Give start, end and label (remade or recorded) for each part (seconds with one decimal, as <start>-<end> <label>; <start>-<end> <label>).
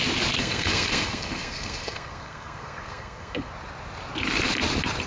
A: 0.0-0.4 recorded; 0.4-3.5 remade; 3.5-5.1 recorded